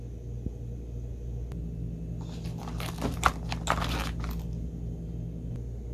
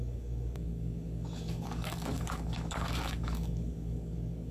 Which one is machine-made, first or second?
second